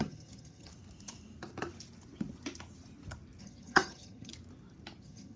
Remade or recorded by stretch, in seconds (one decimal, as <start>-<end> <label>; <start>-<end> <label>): 0.0-0.7 remade; 0.7-3.4 recorded; 3.4-4.3 remade; 4.3-5.0 recorded; 5.0-5.4 remade